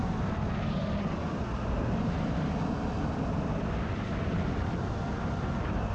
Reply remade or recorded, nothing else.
recorded